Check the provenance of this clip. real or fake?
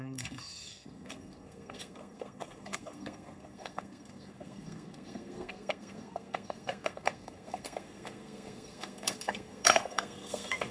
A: fake